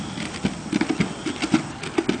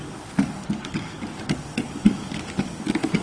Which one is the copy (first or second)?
second